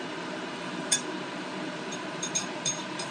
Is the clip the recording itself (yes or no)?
no